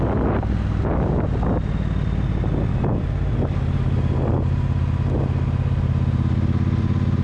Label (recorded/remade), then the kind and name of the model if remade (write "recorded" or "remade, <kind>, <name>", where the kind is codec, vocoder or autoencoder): recorded